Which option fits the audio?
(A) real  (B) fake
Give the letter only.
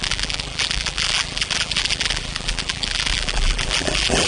B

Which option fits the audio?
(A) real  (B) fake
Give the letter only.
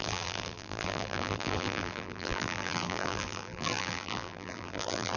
B